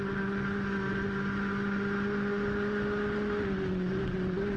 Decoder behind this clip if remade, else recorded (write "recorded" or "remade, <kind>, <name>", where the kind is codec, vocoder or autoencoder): recorded